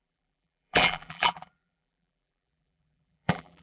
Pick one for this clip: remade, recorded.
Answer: remade